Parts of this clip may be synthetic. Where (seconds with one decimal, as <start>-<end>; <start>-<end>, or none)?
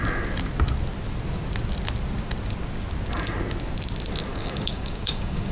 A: 4.3-5.5